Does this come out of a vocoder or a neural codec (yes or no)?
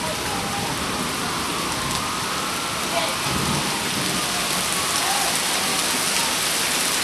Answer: no